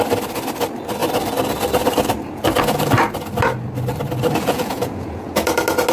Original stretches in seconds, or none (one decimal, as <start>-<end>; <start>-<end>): 0.0-4.4; 5.3-5.9